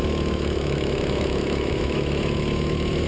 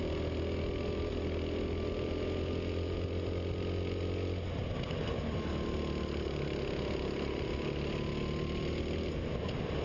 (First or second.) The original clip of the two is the second